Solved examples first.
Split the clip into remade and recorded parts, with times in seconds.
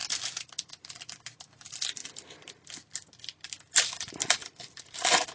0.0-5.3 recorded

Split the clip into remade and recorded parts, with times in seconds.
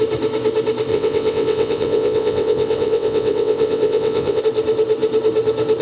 0.0-0.9 recorded; 0.9-4.4 remade; 4.4-5.8 recorded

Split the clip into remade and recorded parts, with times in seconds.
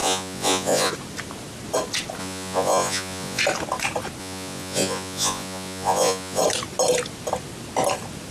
0.0-0.9 remade; 0.9-2.2 recorded; 2.2-3.4 remade; 3.4-4.2 recorded; 4.2-6.4 remade; 6.4-8.3 recorded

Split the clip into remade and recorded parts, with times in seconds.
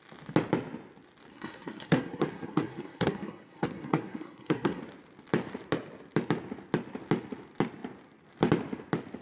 0.0-1.3 recorded; 1.3-4.8 remade; 4.8-9.2 recorded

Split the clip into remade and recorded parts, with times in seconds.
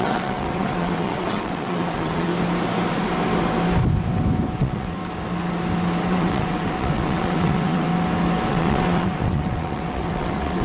0.0-2.3 remade; 2.3-4.6 recorded; 4.6-5.0 remade; 5.0-6.1 recorded; 6.1-7.9 remade; 7.9-8.5 recorded; 8.5-10.6 remade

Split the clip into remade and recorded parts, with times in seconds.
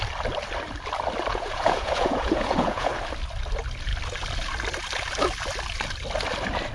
0.0-1.3 recorded; 1.3-2.9 remade; 2.9-6.7 recorded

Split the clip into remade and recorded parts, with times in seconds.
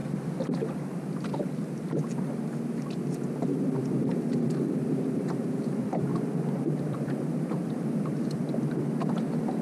0.0-3.8 recorded; 3.8-9.6 remade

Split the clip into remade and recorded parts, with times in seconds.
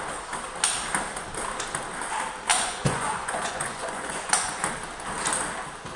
0.0-2.5 recorded; 2.5-4.6 remade; 4.6-6.0 recorded